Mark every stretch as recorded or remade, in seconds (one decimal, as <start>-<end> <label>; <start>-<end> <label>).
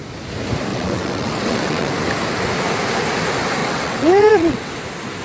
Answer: 0.0-0.7 recorded; 0.7-1.9 remade; 1.9-3.6 recorded; 3.6-4.7 remade; 4.7-5.2 recorded